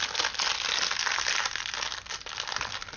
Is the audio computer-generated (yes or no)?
no